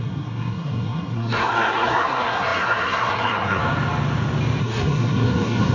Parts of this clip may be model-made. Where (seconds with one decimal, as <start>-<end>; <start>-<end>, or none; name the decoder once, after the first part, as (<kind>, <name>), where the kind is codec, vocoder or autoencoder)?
0.0-3.6 (codec, SNAC); 4.6-5.7